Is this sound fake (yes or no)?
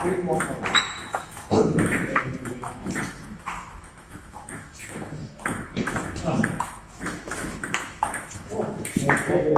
yes